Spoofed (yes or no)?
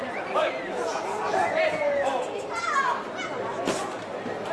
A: no